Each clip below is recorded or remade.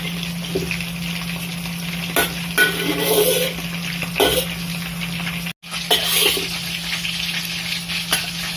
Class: recorded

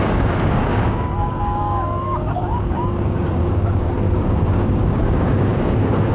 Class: remade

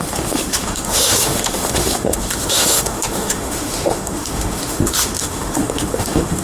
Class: remade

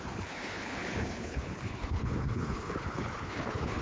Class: remade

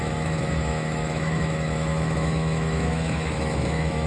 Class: remade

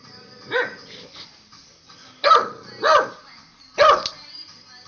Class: remade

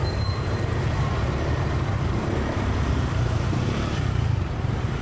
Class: remade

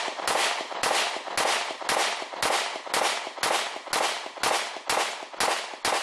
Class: recorded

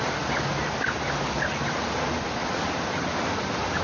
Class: recorded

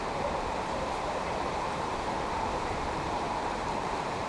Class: remade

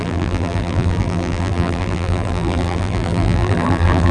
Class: remade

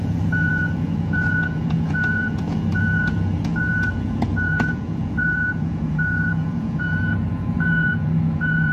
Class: remade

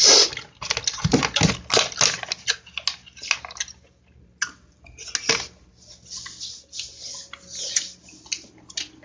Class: recorded